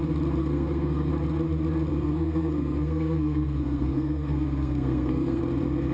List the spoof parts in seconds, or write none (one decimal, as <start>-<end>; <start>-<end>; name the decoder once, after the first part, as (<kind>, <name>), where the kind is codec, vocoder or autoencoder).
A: 0.4-1.1 (codec, SNAC); 1.9-5.4